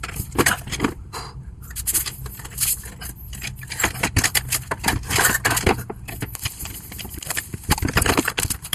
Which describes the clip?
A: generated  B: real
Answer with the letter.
B